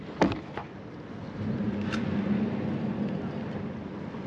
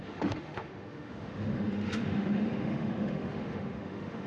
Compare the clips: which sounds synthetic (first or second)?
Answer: second